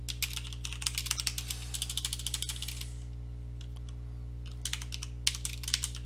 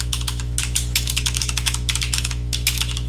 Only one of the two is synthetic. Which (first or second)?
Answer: second